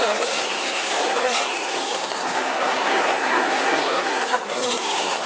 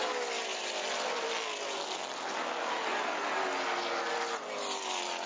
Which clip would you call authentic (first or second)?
second